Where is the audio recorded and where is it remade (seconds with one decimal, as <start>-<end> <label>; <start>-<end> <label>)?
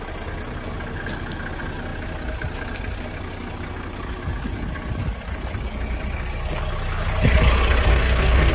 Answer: 0.0-7.9 recorded; 7.9-8.5 remade